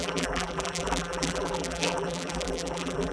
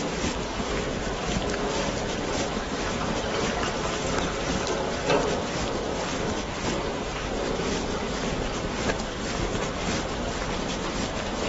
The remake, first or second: first